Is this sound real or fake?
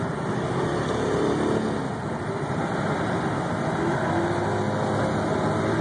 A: real